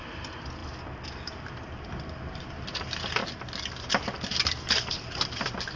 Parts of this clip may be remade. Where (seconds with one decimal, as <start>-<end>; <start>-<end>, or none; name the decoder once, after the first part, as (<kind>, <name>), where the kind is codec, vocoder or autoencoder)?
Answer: 0.0-0.6 (vocoder, BigVGAN v2); 1.5-3.2; 3.8-4.3; 4.9-5.8